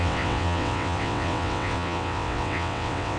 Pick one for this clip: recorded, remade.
remade